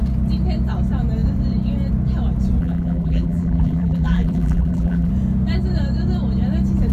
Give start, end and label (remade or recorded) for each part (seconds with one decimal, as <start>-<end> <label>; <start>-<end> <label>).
0.0-2.6 recorded; 2.6-5.1 remade; 5.1-6.9 recorded